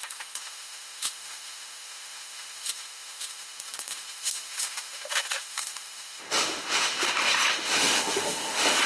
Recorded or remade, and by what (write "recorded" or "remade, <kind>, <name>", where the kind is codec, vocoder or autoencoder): remade, autoencoder, DAC-VAE